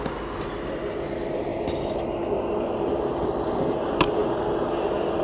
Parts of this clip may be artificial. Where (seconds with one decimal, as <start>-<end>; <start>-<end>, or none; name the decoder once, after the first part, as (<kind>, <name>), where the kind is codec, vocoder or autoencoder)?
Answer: none